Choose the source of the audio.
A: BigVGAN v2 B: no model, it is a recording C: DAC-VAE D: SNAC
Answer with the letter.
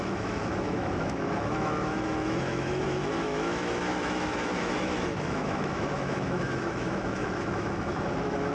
C